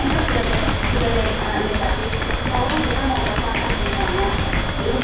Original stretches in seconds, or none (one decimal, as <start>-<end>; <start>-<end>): 0.0-5.0